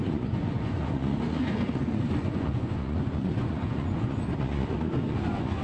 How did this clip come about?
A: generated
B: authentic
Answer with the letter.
A